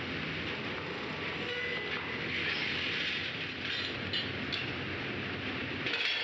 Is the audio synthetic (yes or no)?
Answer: no